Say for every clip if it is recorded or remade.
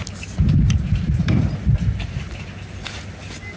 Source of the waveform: recorded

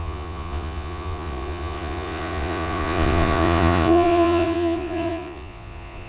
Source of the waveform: remade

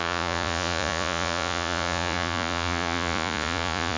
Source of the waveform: remade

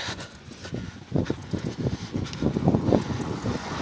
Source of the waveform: remade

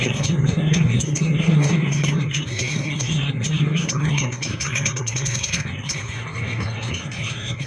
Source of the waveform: remade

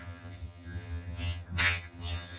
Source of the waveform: remade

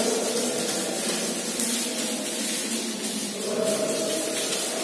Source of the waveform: recorded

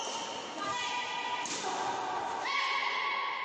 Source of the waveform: recorded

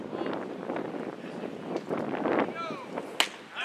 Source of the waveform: recorded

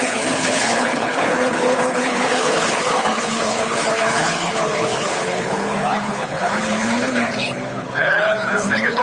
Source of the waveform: remade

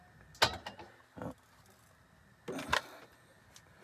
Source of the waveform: recorded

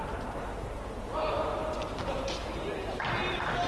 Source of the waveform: recorded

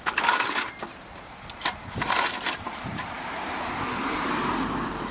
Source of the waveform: remade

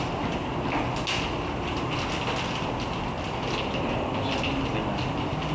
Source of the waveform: recorded